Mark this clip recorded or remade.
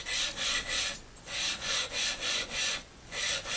remade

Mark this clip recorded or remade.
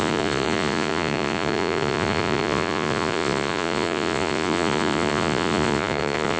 remade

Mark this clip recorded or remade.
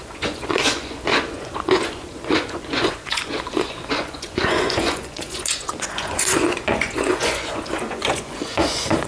remade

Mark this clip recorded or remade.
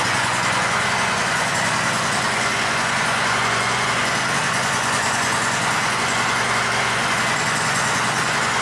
remade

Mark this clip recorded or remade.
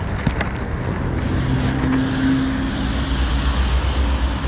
recorded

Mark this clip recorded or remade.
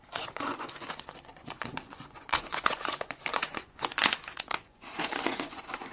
remade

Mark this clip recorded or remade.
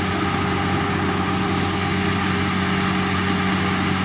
recorded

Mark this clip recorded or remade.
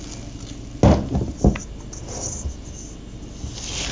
recorded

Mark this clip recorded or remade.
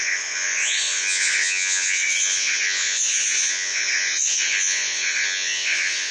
remade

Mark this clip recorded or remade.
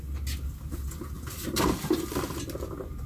recorded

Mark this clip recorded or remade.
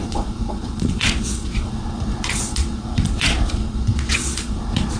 remade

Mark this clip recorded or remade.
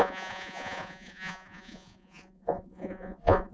remade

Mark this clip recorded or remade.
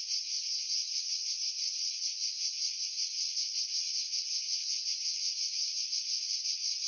remade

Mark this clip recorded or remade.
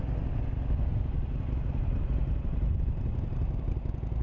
recorded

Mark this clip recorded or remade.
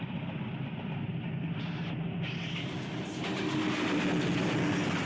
recorded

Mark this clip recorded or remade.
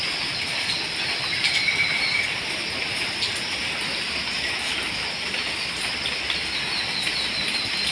recorded